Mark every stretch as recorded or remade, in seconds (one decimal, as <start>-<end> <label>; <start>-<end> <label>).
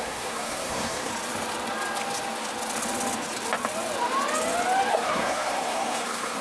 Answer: 0.0-1.1 remade; 1.1-4.9 recorded; 4.9-6.4 remade